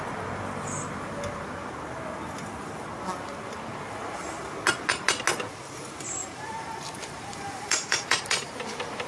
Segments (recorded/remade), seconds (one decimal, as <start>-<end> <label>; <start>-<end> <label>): 0.0-6.2 recorded; 6.2-8.6 remade; 8.6-9.1 recorded

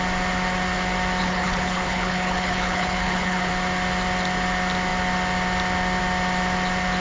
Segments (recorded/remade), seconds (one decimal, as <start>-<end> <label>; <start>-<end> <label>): 0.0-1.2 recorded; 1.2-3.5 remade; 3.5-7.0 recorded

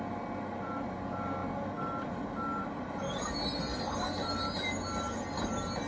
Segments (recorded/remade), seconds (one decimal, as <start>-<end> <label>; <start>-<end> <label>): 0.0-5.9 recorded

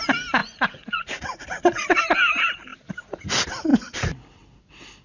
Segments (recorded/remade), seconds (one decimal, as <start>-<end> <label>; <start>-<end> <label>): 0.0-0.4 recorded; 0.4-2.0 remade; 2.0-5.0 recorded

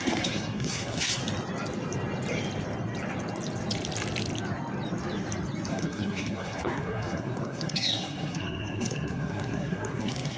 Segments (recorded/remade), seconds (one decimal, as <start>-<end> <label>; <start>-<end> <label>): 0.0-1.2 remade; 1.2-5.7 recorded; 5.7-10.4 remade

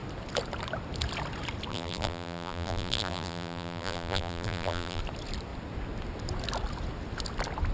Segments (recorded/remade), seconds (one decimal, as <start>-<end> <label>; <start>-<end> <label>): 0.0-1.7 recorded; 1.7-5.0 remade; 5.0-7.7 recorded